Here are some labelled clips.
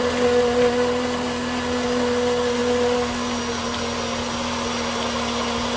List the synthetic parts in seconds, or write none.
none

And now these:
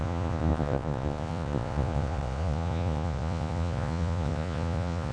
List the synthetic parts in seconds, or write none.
0.0-5.1 (vocoder, Vocos)